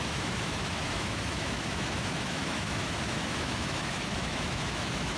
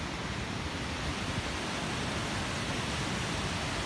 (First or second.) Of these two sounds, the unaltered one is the second